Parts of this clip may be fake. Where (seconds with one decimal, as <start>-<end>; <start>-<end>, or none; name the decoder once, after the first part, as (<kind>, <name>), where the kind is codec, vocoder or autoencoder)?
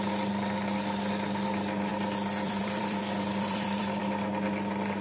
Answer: 1.9-4.0 (vocoder, BigVGAN v2)